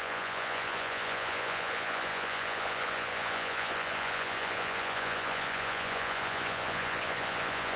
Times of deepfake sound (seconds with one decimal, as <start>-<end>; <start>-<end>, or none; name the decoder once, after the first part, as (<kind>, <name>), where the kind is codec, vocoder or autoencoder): 0.0-7.8 (vocoder, Vocos)